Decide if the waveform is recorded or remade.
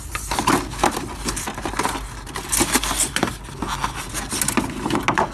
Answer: recorded